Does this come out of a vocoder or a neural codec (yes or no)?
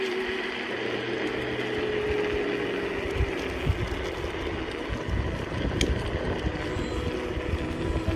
no